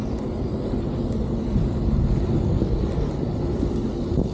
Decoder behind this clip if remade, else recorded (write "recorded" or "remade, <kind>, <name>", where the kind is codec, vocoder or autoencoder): recorded